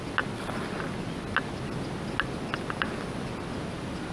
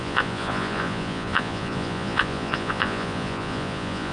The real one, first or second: first